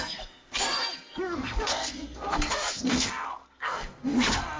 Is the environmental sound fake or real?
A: fake